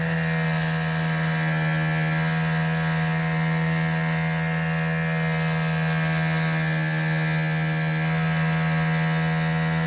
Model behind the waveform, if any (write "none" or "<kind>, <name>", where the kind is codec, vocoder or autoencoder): none